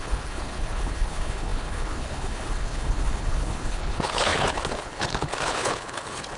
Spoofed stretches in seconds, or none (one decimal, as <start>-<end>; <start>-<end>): 0.0-6.4